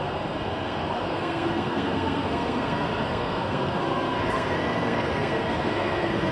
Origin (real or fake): fake